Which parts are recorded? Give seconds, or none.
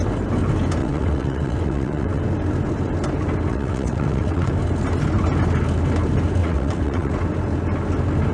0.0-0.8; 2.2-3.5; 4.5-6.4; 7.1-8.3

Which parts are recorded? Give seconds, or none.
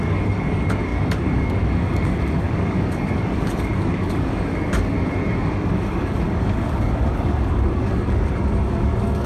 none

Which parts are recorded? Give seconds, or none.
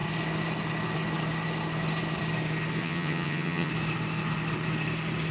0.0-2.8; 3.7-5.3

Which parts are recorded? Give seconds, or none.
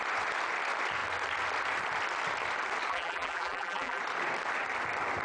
0.0-2.9; 4.0-5.2